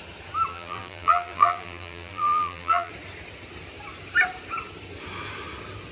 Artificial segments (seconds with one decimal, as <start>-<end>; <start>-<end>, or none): 0.5-2.9